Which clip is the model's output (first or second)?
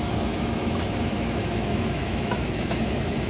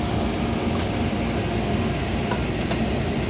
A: first